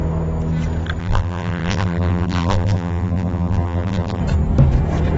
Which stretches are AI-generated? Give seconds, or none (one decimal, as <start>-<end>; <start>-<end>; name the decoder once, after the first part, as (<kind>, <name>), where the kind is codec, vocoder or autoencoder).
1.0-4.2 (vocoder, BigVGAN v2)